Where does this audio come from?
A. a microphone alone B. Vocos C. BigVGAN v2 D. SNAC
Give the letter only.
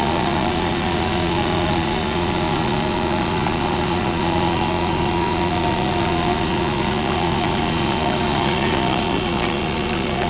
B